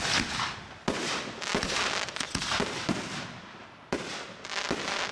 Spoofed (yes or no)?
no